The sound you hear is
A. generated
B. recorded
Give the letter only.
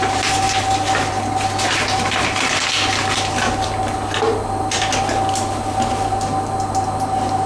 B